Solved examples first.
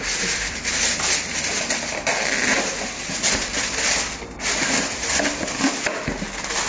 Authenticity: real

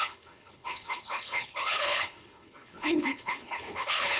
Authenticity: fake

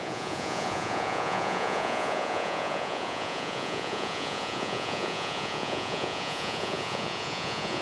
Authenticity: fake